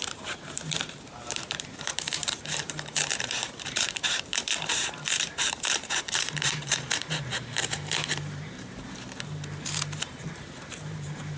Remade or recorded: remade